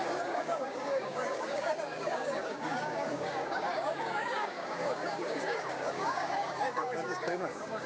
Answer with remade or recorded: remade